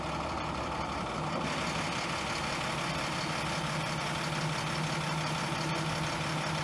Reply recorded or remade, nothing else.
recorded